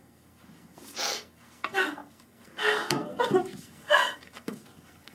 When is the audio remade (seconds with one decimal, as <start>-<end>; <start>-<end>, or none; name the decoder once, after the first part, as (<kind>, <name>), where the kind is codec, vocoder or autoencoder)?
0.0-5.1 (codec, SNAC)